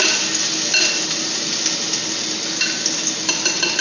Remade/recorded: recorded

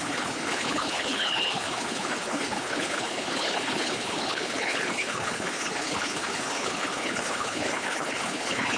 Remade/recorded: remade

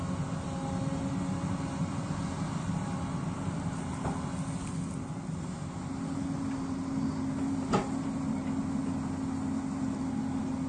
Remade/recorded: recorded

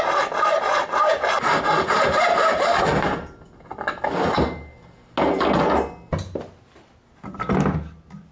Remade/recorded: recorded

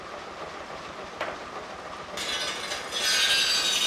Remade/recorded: recorded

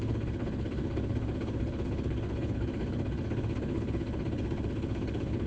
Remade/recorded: remade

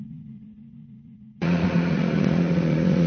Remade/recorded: remade